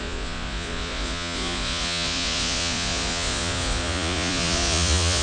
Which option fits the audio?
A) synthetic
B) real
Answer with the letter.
A